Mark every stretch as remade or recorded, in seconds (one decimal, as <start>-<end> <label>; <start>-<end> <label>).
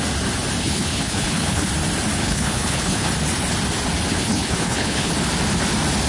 0.0-0.6 recorded; 0.6-1.7 remade; 1.7-2.2 recorded; 2.2-3.1 remade; 3.1-4.1 recorded; 4.1-5.1 remade; 5.1-6.1 recorded